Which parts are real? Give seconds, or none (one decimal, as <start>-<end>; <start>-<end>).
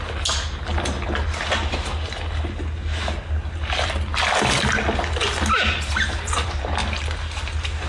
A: 0.0-7.9